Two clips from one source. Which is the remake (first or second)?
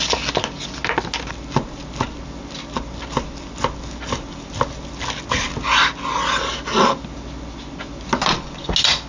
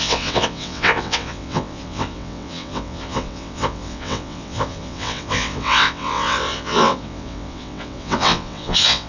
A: second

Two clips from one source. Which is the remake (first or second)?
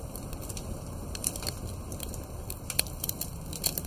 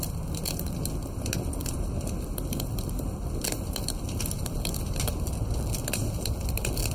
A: first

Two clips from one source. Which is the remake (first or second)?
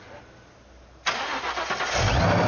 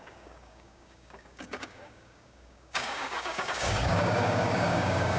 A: second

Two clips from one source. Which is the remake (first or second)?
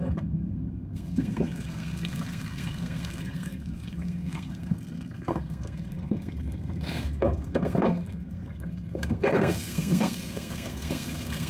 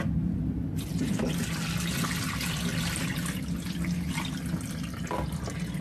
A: first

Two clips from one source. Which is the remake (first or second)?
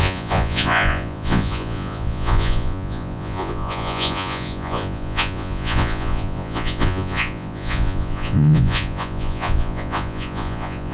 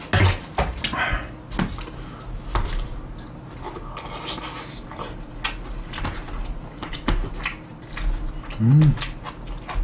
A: first